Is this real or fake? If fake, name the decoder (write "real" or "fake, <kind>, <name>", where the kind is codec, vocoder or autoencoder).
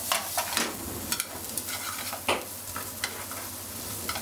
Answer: real